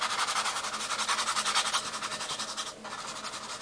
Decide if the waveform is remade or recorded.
recorded